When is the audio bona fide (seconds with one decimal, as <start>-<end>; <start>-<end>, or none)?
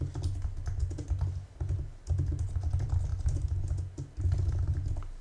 0.0-5.2